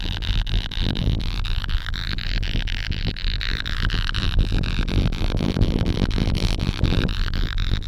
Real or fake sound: fake